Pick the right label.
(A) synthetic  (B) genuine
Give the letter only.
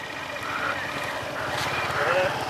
B